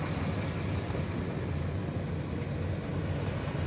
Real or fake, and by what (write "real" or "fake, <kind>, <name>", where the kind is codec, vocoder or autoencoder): real